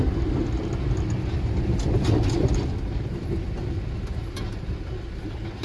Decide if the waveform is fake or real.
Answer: real